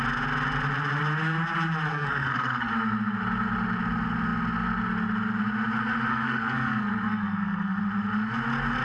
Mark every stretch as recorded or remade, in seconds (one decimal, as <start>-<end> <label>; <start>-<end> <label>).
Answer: 0.0-1.9 recorded; 1.9-2.7 remade; 2.7-6.1 recorded; 6.1-7.8 remade; 7.8-8.8 recorded